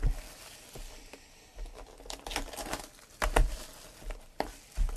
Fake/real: real